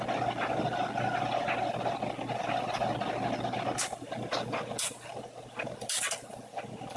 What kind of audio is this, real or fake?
real